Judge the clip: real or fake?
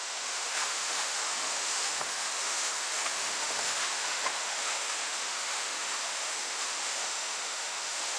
fake